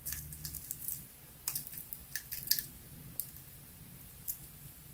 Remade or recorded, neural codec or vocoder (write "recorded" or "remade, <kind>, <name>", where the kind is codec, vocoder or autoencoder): recorded